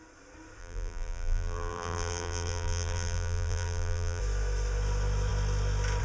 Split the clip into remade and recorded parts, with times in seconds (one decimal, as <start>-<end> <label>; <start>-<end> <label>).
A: 0.0-0.6 recorded; 0.6-4.2 remade; 4.2-6.0 recorded